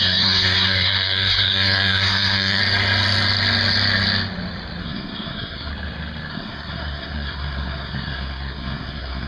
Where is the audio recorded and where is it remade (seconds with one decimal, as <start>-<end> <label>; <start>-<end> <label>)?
0.0-2.6 remade; 2.6-4.8 recorded; 4.8-5.7 remade; 5.7-6.3 recorded; 6.3-9.3 remade